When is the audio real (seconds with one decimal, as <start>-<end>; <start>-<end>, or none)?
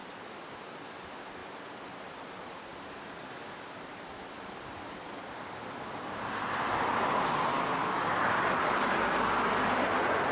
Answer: 0.0-1.4; 5.7-10.3